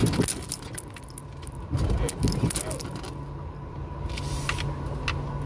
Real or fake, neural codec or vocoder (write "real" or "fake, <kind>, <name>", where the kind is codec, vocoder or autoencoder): real